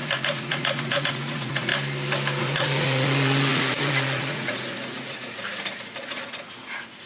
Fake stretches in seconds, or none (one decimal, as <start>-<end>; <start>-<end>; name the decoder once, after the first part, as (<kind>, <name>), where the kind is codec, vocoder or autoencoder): 0.0-1.7 (vocoder, Vocos); 2.4-7.1